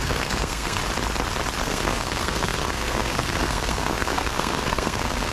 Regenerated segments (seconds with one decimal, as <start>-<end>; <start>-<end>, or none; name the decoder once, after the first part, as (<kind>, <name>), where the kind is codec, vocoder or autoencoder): 0.0-0.8 (codec, SNAC); 1.6-5.3